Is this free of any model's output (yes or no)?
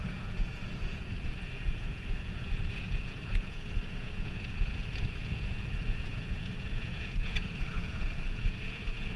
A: no